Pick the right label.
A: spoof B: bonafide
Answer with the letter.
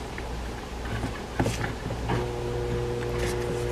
B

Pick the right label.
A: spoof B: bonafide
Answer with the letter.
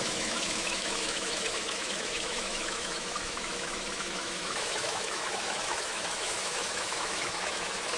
A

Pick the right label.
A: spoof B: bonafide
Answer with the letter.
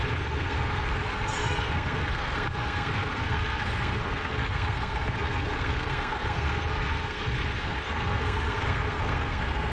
A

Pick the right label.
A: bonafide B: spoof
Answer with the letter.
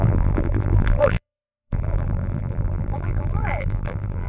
B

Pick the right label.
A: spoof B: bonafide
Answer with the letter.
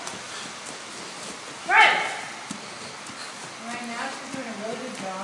B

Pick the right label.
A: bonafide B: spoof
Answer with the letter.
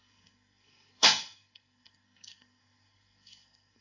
B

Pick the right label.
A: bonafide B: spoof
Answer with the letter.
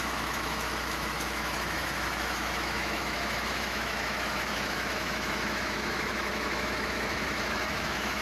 B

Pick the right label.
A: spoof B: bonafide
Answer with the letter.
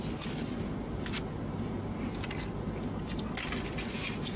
B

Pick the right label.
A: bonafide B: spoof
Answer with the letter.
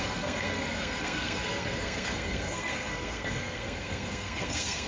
B